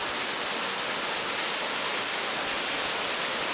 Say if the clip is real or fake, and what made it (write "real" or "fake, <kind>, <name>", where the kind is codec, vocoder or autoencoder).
real